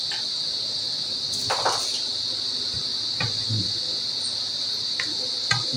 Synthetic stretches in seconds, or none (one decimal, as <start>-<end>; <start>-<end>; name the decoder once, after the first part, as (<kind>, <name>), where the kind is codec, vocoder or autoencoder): none